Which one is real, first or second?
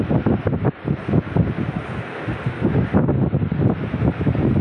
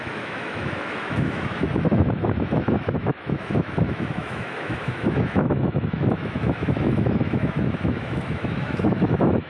first